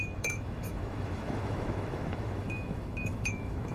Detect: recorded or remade remade